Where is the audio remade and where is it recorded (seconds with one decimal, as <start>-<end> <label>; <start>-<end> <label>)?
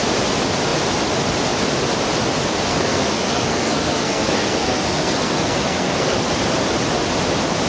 0.0-2.7 recorded; 2.7-6.2 remade; 6.2-7.7 recorded